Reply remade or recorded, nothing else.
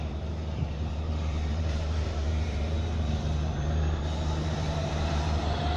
remade